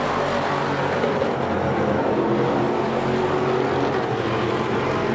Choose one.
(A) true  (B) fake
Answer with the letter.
A